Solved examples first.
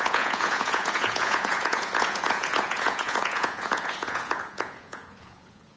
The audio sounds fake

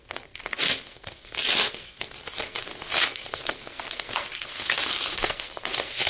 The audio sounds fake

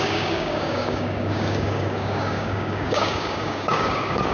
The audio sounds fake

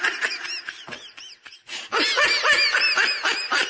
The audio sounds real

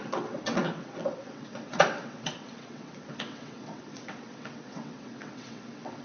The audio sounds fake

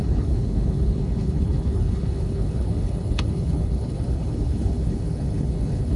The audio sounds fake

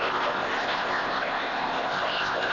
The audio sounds fake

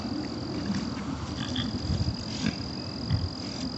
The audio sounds real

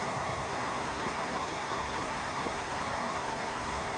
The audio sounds fake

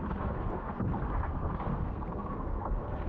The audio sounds fake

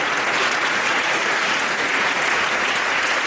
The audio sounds fake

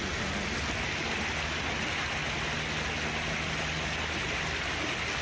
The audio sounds real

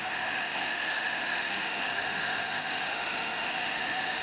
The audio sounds fake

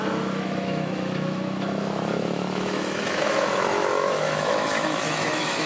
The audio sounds fake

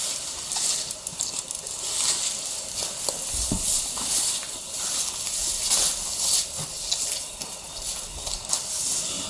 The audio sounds real